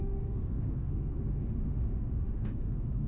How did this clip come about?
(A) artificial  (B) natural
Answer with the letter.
A